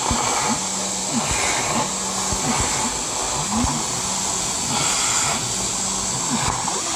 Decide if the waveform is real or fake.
real